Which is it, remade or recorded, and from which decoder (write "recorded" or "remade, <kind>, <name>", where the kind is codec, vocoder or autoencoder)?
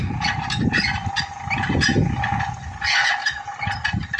recorded